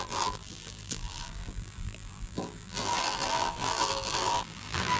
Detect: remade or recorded remade